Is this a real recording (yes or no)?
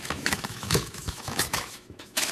no